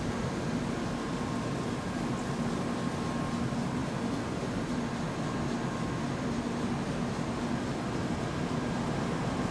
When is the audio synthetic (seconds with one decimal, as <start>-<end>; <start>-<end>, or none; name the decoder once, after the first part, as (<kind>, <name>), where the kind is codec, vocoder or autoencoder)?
none

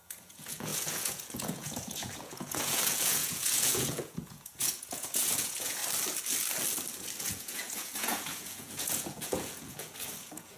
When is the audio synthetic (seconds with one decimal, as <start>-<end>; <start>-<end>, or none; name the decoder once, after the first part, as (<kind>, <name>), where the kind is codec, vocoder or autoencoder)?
0.0-5.8 (vocoder, Vocos); 7.2-10.6